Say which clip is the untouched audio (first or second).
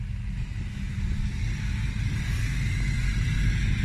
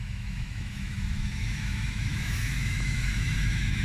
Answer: first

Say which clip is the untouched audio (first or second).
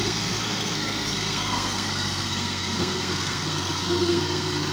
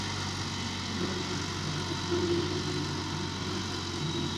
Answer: second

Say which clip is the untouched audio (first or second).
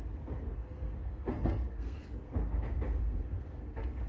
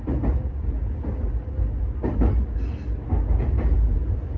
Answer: second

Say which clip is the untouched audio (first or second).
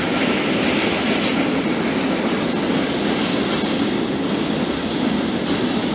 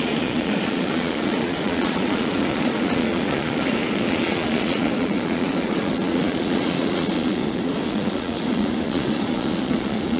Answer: first